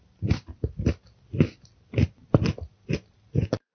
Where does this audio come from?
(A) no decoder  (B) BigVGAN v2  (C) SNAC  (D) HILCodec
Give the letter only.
A